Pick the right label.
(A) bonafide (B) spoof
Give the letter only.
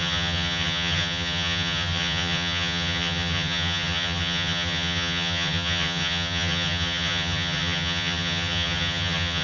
B